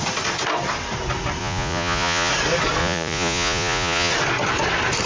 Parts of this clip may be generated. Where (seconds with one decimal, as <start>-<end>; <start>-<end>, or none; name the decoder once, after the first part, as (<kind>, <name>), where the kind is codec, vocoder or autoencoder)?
1.4-2.3 (vocoder, Vocos); 2.8-4.1